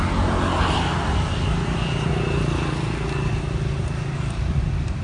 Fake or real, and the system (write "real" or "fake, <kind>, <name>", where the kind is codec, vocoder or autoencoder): real